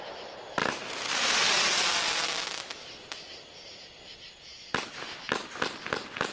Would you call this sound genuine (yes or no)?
yes